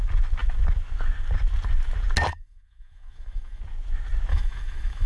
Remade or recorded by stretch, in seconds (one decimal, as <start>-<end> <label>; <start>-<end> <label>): 0.0-2.3 recorded; 2.3-3.6 remade; 3.6-4.3 recorded; 4.3-5.1 remade